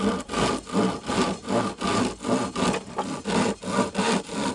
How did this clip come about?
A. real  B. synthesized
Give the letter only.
A